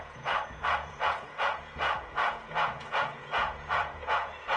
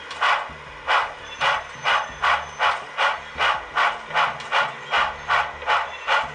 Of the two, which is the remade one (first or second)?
first